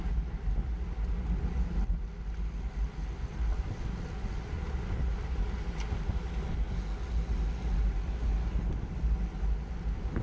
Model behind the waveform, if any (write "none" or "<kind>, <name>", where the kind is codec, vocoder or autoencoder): none